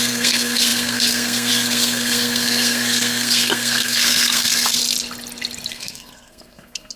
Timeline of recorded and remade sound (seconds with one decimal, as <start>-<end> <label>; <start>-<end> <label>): 0.0-4.8 remade; 4.8-5.7 recorded; 5.7-7.0 remade